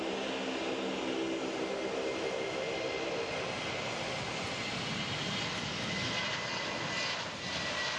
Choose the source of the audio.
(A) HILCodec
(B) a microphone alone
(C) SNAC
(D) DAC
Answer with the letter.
B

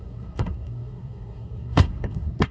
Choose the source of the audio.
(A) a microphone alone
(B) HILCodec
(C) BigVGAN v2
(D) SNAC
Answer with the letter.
D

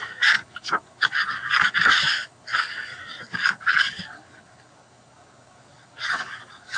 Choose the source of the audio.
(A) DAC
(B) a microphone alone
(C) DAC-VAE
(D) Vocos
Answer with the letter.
A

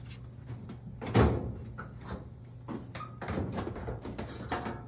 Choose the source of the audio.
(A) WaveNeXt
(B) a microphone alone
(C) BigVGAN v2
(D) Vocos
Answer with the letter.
B